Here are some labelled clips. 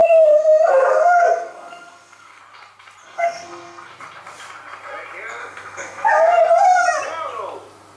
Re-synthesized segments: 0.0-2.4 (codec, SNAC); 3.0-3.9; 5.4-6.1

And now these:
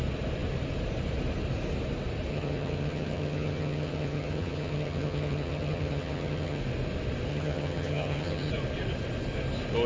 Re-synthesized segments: 2.3-6.6 (vocoder, HiFi-GAN); 7.3-8.5

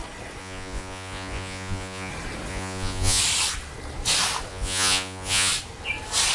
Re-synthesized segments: 0.4-2.1 (vocoder, Vocos); 2.5-3.2; 4.5-5.5

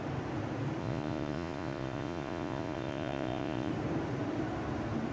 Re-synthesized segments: 0.8-3.7 (vocoder, Vocos)

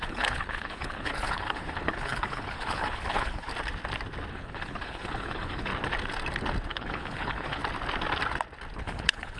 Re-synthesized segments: 0.0-3.5 (codec, HILCodec); 4.3-5.7; 6.7-7.6; 8.8-9.4

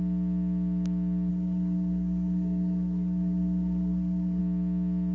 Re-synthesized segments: 1.3-4.4 (codec, SNAC)

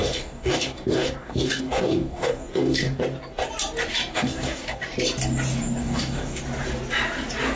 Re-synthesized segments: 0.0-3.0 (codec, DAC); 4.1-4.8; 5.8-6.4